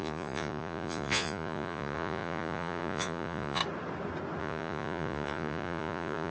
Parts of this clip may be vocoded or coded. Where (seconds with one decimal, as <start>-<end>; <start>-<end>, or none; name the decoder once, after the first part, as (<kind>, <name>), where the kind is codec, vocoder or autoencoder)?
0.0-3.6 (vocoder, Vocos); 4.4-6.3